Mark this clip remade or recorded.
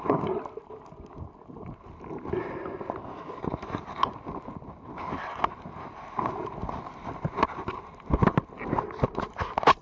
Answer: recorded